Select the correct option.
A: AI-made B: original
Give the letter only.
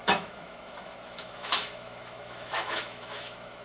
A